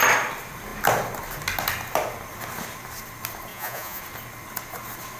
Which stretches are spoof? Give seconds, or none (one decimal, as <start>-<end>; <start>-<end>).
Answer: 3.5-4.0